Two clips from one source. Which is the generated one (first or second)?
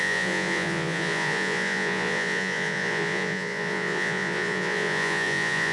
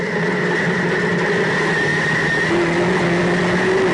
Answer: first